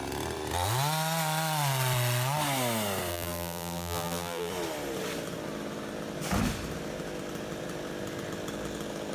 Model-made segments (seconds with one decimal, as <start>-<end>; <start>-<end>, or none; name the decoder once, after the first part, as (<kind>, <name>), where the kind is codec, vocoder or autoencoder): 3.1-4.5 (vocoder, BigVGAN v2)